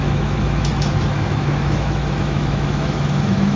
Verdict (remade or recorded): remade